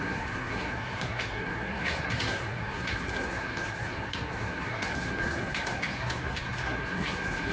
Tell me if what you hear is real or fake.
fake